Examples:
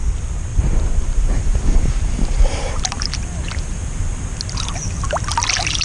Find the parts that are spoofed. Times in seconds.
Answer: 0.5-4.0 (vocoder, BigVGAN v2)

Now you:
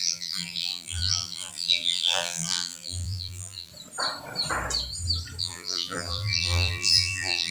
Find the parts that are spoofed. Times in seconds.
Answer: 0.0-3.7 (vocoder, BigVGAN v2); 5.4-7.5

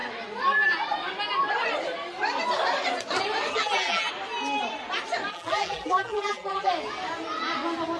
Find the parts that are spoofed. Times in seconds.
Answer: 3.5-4.1 (vocoder, BigVGAN v2); 5.3-6.7

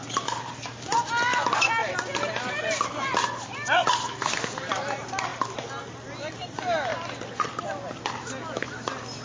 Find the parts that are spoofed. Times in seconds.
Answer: none

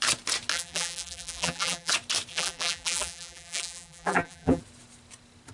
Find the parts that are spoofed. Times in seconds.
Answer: 0.5-1.9 (vocoder, BigVGAN v2); 2.3-4.6

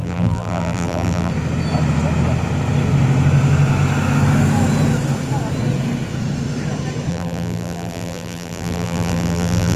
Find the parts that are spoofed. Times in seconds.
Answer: 0.0-1.3 (vocoder, BigVGAN v2); 7.1-9.8